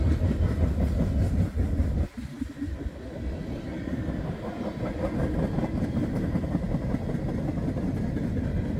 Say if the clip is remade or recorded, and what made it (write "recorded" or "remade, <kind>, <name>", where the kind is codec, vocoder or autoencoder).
recorded